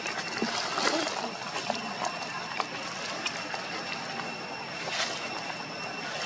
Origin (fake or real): real